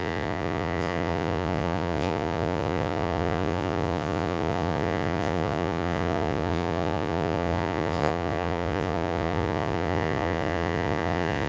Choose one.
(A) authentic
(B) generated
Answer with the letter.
B